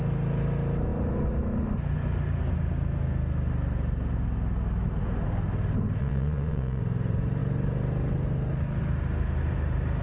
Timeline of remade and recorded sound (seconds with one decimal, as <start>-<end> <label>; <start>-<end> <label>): 0.0-6.0 recorded; 6.0-6.8 remade; 6.8-10.0 recorded